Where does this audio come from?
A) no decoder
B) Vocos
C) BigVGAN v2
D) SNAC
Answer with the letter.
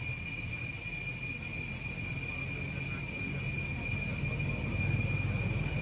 A